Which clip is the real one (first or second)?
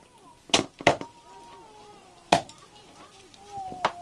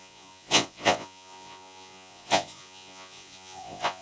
first